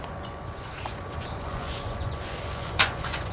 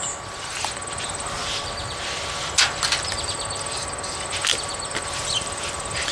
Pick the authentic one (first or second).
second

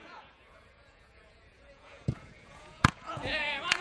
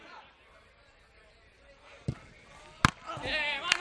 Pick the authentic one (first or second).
second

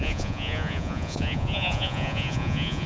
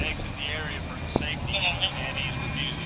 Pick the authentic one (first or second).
second